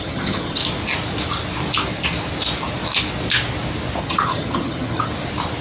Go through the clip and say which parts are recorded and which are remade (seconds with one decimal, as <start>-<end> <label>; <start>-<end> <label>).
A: 0.0-0.6 remade; 0.6-4.0 recorded; 4.0-5.1 remade; 5.1-5.6 recorded